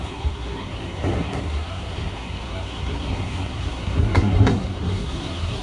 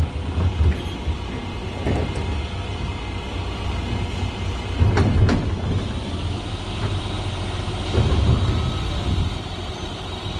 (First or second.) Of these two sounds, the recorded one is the second